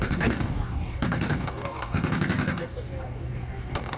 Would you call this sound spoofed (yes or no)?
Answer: yes